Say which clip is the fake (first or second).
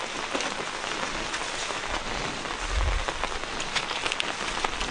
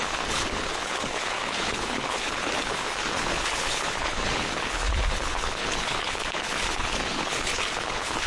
second